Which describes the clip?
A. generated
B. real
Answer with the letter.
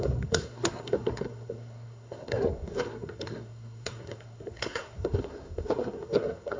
A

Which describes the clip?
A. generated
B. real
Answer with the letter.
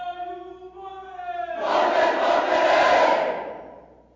B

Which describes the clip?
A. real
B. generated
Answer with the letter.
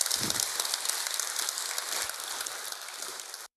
A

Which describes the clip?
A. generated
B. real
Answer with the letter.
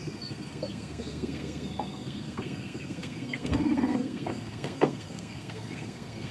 A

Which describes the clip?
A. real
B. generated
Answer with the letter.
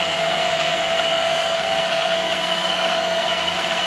B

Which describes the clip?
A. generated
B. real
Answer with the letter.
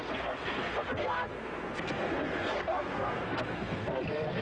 A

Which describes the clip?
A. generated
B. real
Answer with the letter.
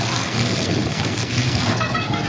A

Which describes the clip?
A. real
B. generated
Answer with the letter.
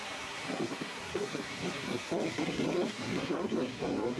B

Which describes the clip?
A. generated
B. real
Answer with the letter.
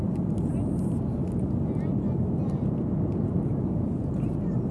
B